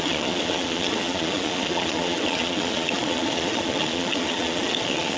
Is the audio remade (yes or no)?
yes